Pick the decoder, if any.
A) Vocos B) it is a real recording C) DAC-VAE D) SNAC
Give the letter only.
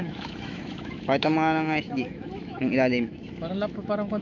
C